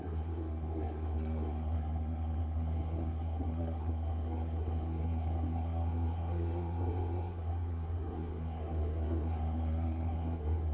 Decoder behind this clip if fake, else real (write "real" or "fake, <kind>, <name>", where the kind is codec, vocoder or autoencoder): fake, codec, SNAC